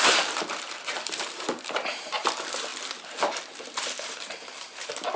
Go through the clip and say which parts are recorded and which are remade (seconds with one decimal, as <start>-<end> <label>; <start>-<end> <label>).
0.0-2.7 remade; 2.7-3.6 recorded; 3.6-5.2 remade